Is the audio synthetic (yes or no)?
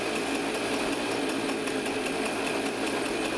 no